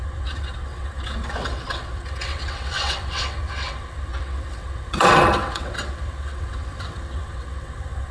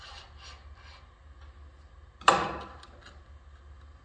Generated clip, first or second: first